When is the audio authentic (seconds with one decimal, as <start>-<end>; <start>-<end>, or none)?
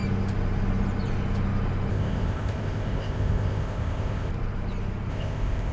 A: 0.0-1.9; 4.3-5.1